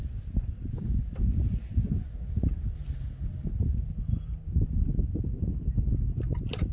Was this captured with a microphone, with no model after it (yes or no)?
yes